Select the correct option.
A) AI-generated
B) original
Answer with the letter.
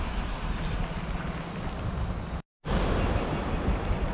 B